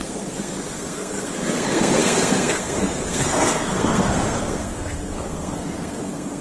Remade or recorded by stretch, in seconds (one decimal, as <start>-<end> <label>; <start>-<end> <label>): 0.0-6.4 remade